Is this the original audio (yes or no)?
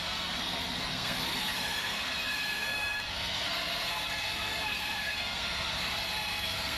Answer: no